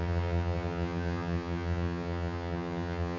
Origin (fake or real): fake